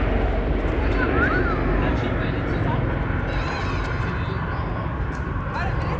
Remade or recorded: recorded